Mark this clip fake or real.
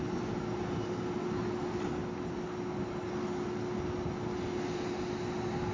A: real